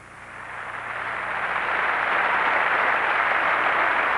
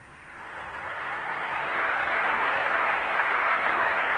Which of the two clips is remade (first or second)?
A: second